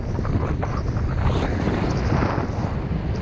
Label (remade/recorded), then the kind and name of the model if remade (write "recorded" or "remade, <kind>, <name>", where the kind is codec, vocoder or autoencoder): recorded